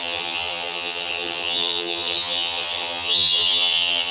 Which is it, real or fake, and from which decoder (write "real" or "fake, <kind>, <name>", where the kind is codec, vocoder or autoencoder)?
fake, vocoder, HiFi-GAN